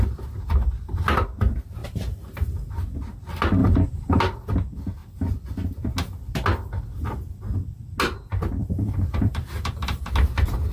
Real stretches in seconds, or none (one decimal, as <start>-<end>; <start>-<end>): 0.0-1.8; 2.7-3.6; 4.2-8.6; 10.1-10.7